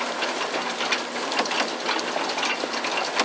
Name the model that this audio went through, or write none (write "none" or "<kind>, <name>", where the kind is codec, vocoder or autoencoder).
none